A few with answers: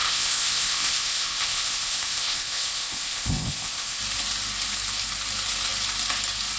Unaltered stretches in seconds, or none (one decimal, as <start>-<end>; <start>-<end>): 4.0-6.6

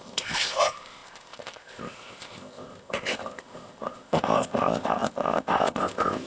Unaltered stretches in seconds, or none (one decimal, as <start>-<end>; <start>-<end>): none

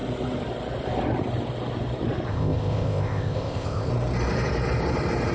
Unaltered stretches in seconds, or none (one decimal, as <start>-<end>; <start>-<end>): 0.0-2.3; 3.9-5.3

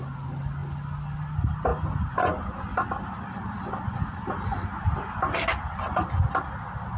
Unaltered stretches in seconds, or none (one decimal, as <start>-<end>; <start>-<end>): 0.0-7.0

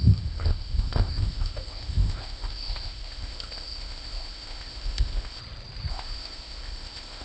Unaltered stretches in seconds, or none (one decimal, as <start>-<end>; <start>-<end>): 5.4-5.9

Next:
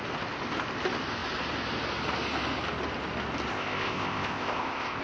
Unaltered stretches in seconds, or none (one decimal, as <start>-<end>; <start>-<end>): 0.0-3.5

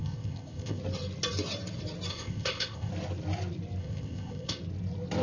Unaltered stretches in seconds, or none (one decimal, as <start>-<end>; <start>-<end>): 0.8-2.1; 2.9-3.8; 4.6-5.2

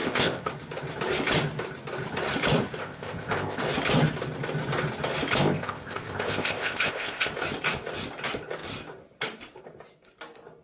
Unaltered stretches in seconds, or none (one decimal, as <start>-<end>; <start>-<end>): 0.5-2.8; 3.6-5.4; 7.3-10.6